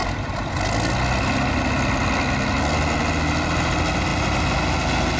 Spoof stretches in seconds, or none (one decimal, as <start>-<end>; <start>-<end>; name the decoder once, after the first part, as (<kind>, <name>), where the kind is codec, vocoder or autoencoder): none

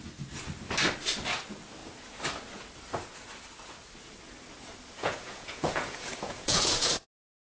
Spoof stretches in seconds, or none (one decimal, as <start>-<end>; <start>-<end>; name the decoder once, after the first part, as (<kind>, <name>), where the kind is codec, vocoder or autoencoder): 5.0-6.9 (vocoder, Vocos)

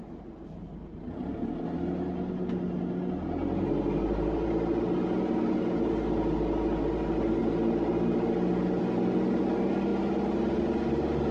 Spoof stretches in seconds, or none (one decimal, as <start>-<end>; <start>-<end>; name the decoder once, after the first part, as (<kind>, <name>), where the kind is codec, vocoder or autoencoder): none

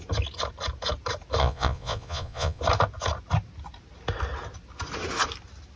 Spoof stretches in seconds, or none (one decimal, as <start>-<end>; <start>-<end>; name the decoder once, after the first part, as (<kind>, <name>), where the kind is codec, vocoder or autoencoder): 1.4-2.6 (vocoder, Vocos)

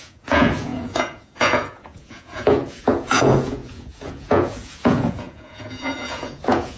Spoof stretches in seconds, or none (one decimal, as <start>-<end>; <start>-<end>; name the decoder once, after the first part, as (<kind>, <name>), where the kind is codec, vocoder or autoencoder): 0.0-6.8 (vocoder, Vocos)

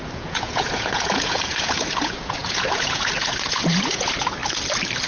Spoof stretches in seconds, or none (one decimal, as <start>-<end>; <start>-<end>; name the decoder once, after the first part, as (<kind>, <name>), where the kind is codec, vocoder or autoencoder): 0.0-4.4 (vocoder, Vocos)